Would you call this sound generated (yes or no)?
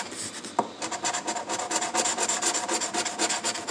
no